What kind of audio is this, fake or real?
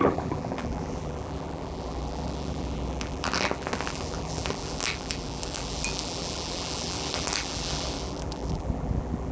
fake